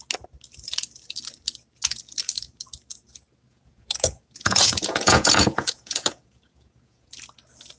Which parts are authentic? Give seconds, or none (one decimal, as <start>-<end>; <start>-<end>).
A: 0.0-3.5; 7.1-7.8